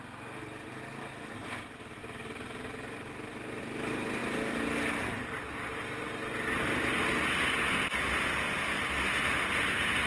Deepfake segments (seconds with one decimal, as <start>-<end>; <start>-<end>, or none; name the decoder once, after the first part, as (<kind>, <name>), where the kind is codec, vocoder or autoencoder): none